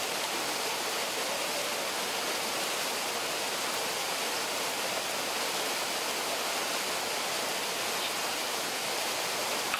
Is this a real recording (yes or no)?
yes